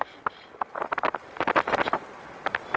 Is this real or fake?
real